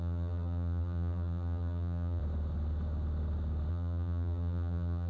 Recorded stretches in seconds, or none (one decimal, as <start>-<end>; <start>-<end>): 2.2-3.7